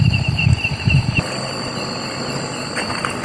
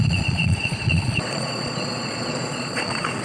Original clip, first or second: first